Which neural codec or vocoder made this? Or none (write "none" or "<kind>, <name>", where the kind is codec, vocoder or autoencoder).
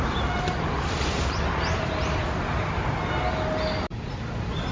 none